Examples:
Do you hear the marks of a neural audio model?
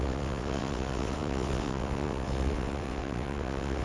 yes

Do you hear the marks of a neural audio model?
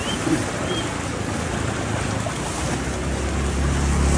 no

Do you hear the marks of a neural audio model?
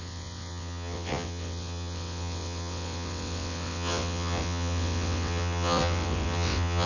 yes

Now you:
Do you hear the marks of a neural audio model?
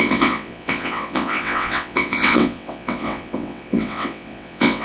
yes